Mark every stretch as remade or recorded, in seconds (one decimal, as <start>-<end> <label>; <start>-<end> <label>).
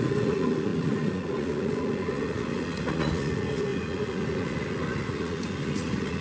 0.0-6.2 remade